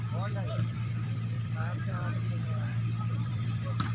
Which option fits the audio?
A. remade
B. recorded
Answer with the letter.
A